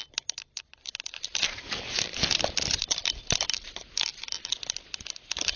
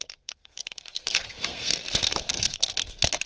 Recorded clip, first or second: first